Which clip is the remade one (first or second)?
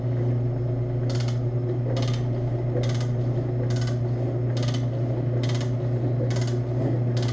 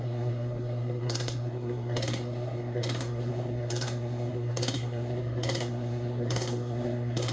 second